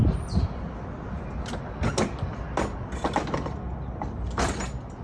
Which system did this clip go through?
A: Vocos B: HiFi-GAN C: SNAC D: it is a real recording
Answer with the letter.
D